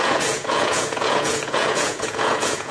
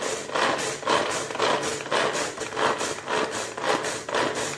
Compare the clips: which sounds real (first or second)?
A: second